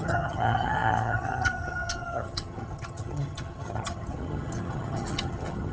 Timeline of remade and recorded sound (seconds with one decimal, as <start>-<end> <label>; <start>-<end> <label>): 0.0-5.7 remade